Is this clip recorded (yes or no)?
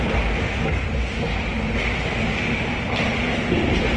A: yes